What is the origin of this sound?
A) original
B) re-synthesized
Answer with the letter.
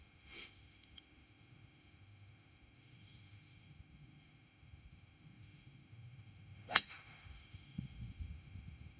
B